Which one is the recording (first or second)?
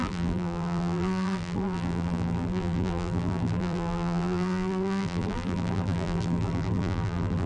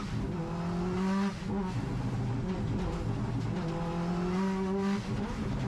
second